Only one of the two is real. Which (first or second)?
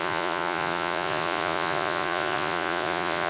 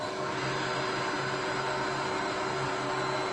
second